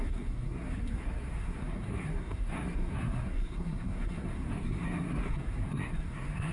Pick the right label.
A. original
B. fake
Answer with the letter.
B